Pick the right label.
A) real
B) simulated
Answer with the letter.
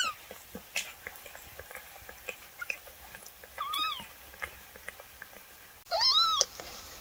A